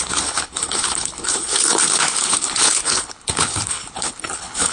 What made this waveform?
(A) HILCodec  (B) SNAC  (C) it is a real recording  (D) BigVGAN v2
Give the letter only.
A